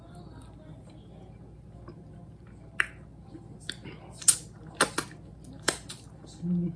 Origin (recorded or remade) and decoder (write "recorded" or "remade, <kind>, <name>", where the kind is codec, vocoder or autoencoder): recorded